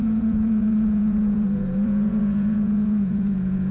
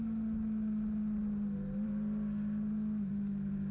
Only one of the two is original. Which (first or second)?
second